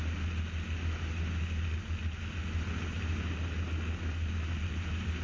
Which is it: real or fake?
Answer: real